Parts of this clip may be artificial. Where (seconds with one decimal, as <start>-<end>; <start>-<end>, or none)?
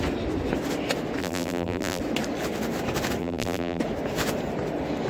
1.2-2.0; 3.2-3.8